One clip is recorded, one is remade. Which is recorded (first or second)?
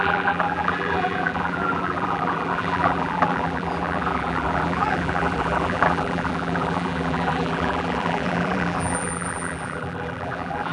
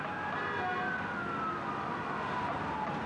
second